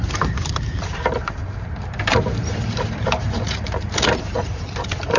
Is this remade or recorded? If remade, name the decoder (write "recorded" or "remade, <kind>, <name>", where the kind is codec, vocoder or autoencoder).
remade, vocoder, BigVGAN v2